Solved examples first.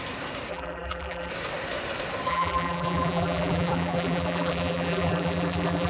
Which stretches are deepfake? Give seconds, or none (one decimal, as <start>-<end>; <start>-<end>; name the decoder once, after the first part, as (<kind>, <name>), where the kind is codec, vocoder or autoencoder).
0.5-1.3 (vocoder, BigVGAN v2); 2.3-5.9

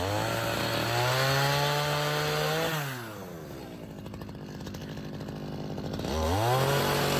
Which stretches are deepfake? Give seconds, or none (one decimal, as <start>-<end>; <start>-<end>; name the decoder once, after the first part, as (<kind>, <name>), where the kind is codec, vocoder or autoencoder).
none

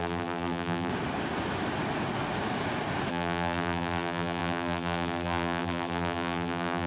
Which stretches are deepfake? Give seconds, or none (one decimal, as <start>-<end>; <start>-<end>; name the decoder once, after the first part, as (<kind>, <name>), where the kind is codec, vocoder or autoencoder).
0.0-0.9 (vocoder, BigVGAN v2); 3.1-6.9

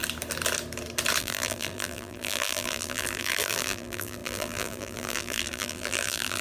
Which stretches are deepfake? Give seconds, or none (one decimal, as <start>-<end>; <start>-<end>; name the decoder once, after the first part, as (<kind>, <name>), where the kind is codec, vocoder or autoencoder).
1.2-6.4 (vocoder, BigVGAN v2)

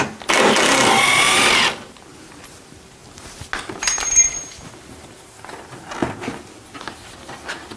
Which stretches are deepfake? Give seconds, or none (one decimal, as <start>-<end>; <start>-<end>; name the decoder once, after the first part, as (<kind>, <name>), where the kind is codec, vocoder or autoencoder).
1.1-2.2 (vocoder, BigVGAN v2)

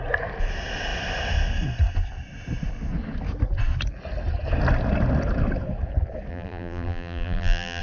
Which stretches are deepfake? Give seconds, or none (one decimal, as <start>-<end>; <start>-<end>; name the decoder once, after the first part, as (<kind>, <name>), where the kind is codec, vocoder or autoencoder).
6.3-7.8 (vocoder, BigVGAN v2)

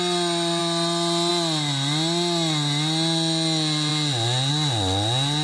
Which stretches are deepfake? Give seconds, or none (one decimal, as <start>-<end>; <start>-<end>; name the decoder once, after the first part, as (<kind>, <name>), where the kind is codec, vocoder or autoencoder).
none

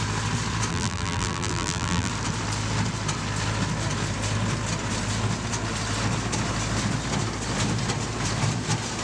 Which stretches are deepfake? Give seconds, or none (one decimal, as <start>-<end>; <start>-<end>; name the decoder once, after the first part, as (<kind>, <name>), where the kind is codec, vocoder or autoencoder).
0.7-2.1 (vocoder, BigVGAN v2)